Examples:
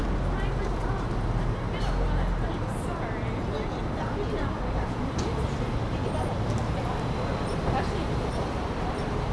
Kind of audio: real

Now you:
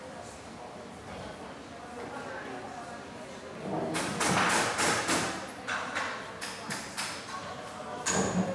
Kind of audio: real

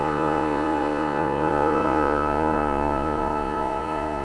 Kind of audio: fake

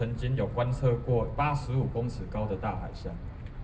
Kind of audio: real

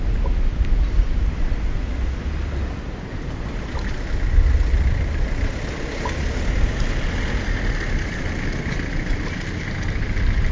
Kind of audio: real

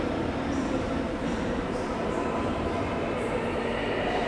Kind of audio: fake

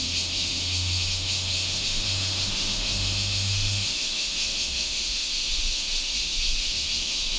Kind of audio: fake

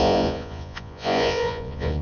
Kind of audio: fake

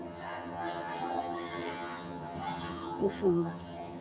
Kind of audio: fake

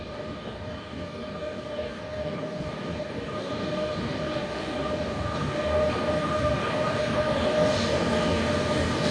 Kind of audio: fake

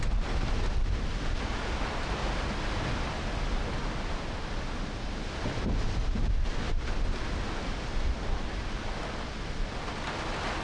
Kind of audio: real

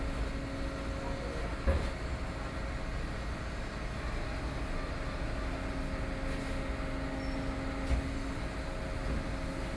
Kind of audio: real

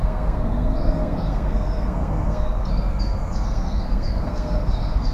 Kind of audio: fake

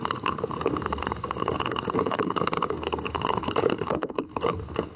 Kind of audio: fake